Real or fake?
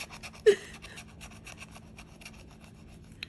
real